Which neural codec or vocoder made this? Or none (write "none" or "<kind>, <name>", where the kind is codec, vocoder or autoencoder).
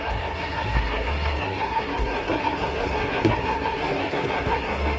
codec, SNAC